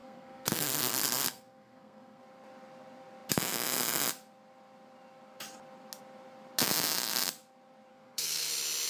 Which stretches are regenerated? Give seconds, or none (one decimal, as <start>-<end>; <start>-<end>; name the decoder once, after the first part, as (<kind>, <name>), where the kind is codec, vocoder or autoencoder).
0.0-2.2 (codec, SNAC); 7.9-8.5